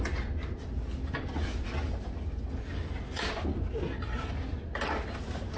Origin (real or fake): real